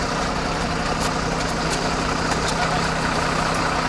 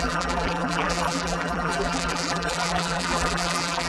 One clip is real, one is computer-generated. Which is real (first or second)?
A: first